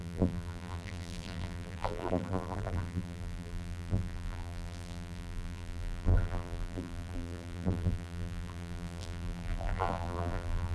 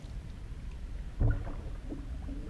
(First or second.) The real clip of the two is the second